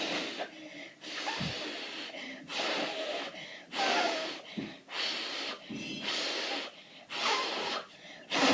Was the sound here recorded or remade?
recorded